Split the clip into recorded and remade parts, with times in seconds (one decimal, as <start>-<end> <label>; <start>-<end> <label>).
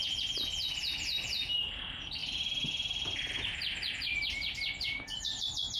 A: 0.0-2.2 recorded; 2.2-3.9 remade; 3.9-5.8 recorded